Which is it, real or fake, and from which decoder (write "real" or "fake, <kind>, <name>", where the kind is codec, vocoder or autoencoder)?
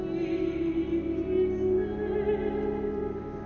real